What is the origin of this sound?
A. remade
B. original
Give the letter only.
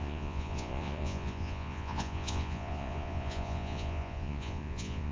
A